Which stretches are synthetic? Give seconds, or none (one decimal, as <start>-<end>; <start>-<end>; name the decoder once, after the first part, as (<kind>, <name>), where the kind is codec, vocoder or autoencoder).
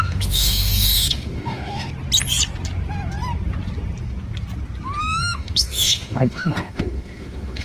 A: 0.0-1.9 (autoencoder, DAC-VAE); 5.0-7.6